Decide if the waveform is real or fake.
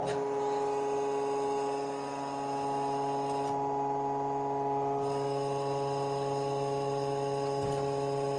real